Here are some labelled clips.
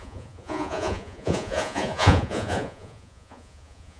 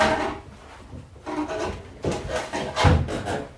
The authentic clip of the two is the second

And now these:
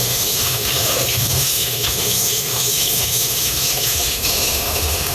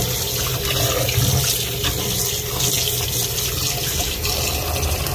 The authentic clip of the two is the second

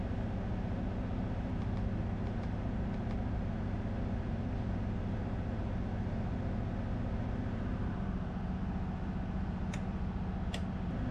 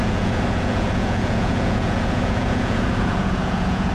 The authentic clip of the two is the first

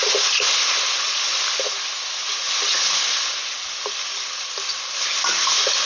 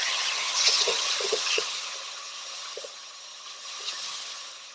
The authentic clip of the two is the first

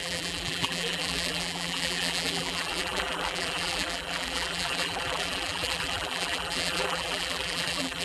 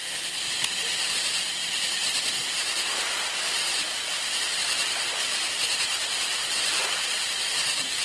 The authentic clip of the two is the second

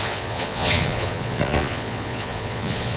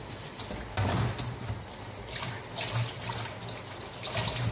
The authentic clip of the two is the second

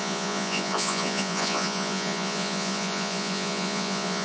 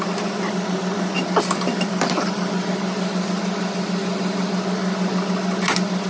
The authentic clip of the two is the second